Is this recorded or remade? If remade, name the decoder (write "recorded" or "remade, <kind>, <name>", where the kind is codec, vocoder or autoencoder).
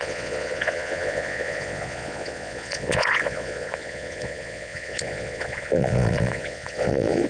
remade, vocoder, Vocos